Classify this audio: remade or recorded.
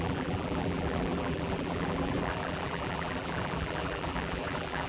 remade